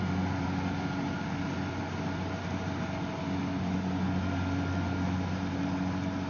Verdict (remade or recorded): recorded